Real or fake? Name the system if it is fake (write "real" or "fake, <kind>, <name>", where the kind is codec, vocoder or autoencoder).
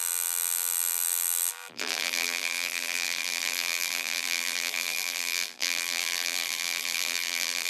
fake, vocoder, BigVGAN v2